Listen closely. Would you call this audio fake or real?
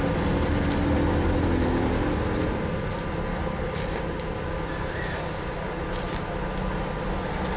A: real